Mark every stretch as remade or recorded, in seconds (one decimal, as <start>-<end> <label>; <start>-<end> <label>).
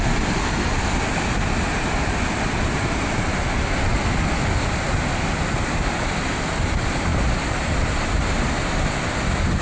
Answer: 0.0-9.6 recorded